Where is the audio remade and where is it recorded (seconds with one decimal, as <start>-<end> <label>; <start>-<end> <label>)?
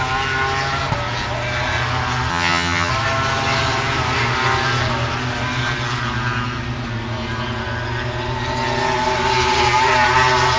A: 0.0-2.3 recorded; 2.3-2.9 remade; 2.9-10.6 recorded